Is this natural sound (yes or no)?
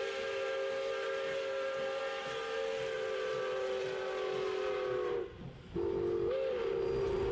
yes